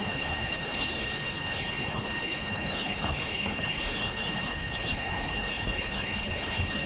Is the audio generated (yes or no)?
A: yes